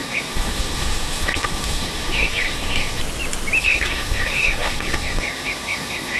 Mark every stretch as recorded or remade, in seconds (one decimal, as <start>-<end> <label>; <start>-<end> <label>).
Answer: 0.0-3.0 remade; 3.0-3.6 recorded; 3.6-6.2 remade